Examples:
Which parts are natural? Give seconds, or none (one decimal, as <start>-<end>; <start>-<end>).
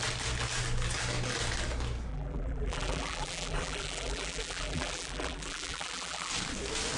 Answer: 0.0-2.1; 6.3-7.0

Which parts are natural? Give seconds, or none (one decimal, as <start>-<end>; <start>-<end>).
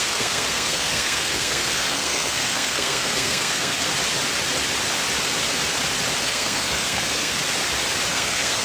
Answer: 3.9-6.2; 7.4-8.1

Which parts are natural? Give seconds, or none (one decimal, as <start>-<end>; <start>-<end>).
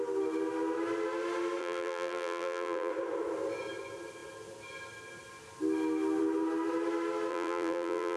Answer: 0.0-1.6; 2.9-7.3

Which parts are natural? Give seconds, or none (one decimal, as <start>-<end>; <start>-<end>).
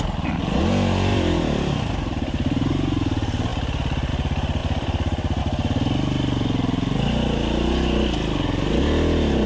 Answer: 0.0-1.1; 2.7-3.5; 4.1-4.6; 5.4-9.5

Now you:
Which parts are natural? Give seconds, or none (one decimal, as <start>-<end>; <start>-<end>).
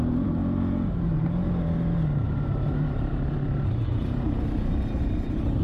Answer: none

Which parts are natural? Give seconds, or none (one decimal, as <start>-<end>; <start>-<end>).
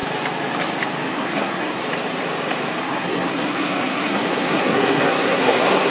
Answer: 0.0-1.1; 1.8-2.8